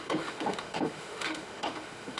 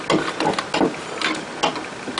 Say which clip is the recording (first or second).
second